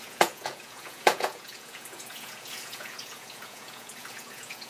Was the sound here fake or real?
fake